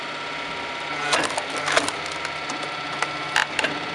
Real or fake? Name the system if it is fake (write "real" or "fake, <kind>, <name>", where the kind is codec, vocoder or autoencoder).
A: real